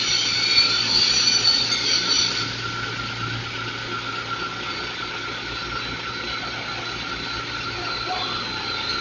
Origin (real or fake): real